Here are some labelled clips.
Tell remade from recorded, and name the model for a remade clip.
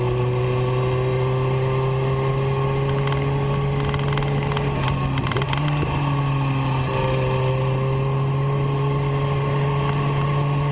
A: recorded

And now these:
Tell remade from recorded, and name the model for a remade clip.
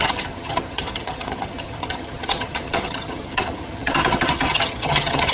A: remade, vocoder, HiFi-GAN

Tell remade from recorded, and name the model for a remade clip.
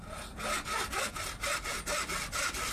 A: recorded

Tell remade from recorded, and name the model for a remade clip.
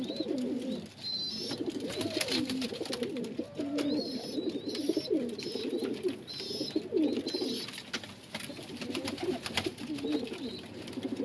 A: recorded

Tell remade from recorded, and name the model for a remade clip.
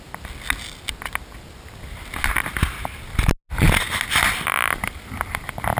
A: recorded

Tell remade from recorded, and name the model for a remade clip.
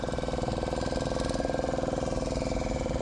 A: recorded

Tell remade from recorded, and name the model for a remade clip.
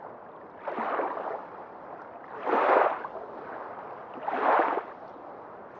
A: recorded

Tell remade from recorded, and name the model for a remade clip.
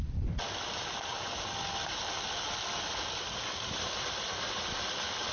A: recorded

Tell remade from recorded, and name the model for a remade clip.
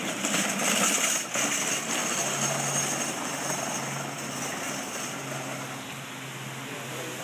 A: recorded